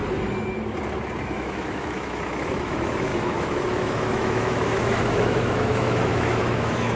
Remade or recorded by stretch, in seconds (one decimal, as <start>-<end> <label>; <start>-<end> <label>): 0.0-1.2 recorded; 1.2-7.0 remade